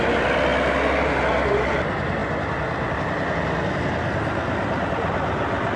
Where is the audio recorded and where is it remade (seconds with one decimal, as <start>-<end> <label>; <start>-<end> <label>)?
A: 0.0-0.5 remade; 0.5-1.4 recorded; 1.4-2.2 remade; 2.2-4.9 recorded; 4.9-5.8 remade